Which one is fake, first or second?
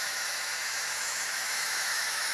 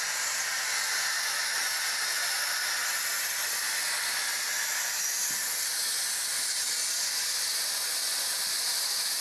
first